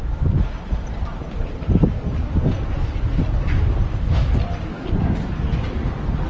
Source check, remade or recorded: recorded